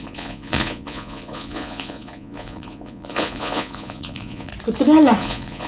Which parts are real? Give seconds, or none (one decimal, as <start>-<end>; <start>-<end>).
4.5-5.2